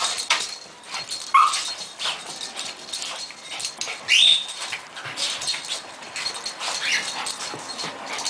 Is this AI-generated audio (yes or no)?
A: yes